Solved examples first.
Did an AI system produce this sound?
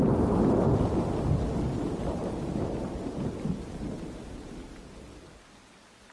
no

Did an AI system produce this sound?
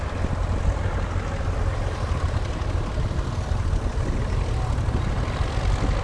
no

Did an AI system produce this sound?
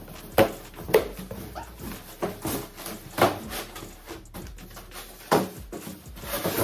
no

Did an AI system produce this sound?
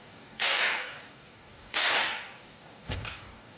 yes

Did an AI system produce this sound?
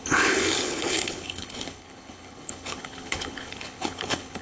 yes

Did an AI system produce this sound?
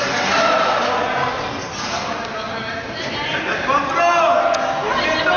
no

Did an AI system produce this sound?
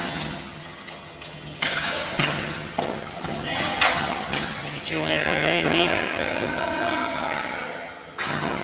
yes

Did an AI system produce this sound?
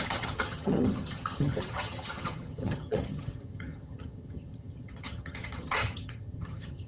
yes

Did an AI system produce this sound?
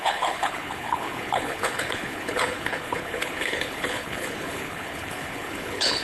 yes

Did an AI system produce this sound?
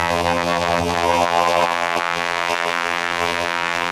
yes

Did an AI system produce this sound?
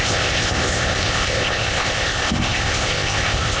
yes